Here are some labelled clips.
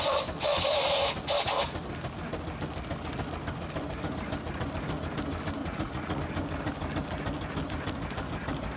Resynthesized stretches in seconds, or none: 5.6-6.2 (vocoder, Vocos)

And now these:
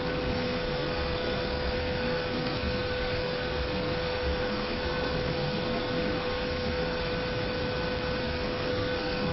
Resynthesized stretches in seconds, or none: 0.0-7.1 (codec, SNAC); 8.2-9.3

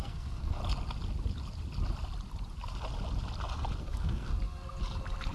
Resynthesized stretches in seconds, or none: 0.0-0.6 (codec, SNAC); 3.8-4.3

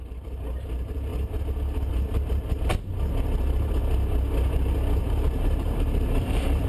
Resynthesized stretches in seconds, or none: 0.0-1.1 (vocoder, BigVGAN v2); 1.9-3.8; 5.0-6.7

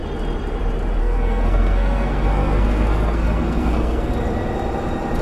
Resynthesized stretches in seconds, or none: 1.0-4.1 (codec, SNAC)

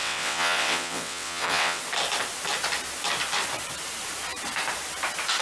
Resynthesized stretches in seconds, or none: 0.0-1.8 (vocoder, WaveNeXt)

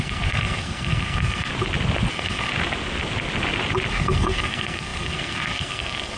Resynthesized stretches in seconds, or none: 0.0-1.5 (codec, SNAC); 2.1-2.5; 3.9-6.2

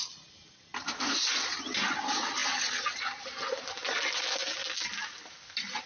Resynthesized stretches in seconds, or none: none